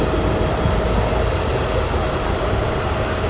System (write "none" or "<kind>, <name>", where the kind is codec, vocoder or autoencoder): none